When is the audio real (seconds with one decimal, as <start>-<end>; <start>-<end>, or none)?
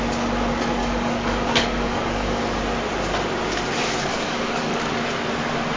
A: 0.0-0.8; 2.4-4.1; 4.8-5.8